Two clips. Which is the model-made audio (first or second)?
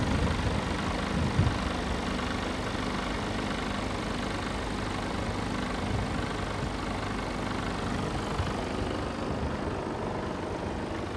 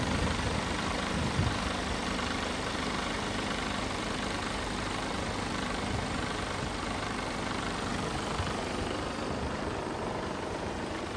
second